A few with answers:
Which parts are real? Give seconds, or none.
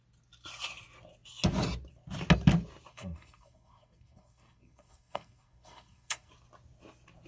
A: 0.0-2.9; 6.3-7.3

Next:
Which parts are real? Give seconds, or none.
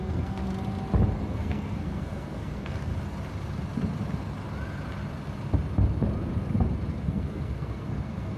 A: 0.4-1.3; 2.9-6.9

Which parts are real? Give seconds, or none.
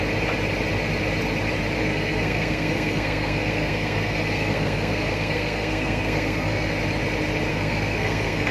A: 0.0-1.8; 6.7-7.5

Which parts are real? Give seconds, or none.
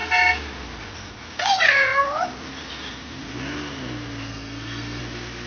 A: 0.0-4.3; 5.0-5.5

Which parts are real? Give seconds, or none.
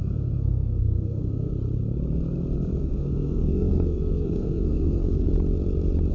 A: 1.5-2.8; 5.3-6.1